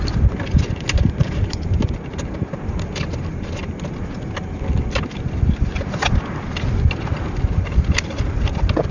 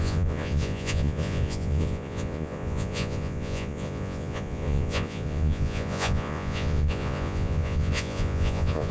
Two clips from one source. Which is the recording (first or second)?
first